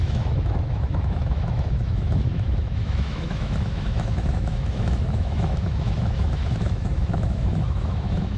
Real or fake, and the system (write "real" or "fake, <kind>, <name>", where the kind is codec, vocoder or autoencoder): fake, autoencoder, DAC-VAE